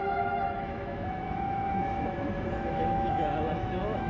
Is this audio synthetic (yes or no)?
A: yes